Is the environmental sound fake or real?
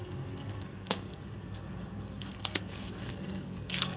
fake